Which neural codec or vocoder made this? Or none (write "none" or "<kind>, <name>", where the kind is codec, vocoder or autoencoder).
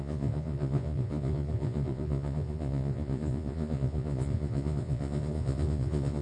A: vocoder, Vocos